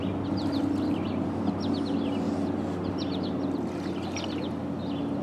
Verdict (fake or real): real